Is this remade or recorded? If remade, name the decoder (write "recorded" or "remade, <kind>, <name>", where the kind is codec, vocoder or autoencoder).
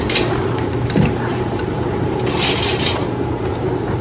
remade, vocoder, BigVGAN v2